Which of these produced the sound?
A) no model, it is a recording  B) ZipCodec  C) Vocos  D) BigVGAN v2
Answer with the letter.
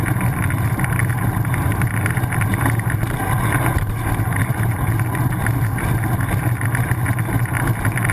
A